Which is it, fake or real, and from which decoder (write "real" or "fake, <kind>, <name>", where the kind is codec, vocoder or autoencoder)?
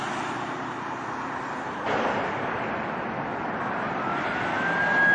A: real